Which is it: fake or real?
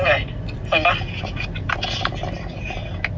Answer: real